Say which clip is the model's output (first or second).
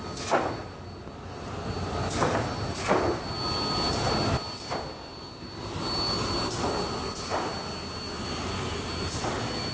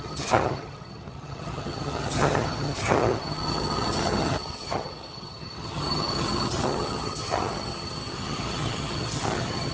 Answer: second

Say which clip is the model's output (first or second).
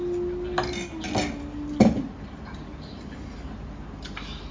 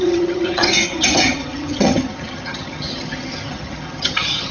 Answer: second